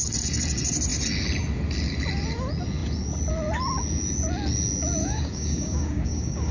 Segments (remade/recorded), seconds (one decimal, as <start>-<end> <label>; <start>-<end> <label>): 0.0-5.0 recorded; 5.0-6.5 remade